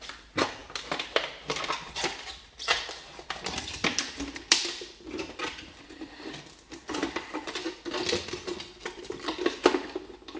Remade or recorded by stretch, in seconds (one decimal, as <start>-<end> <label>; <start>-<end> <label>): 0.0-7.6 remade; 7.6-8.3 recorded; 8.3-10.4 remade